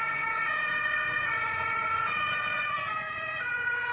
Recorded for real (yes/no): no